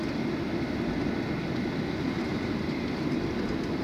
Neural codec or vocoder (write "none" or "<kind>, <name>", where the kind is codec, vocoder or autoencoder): none